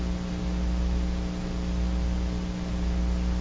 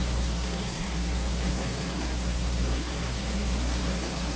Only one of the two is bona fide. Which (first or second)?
first